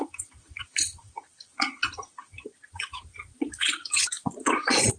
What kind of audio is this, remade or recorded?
remade